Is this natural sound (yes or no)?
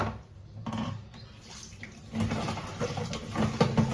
yes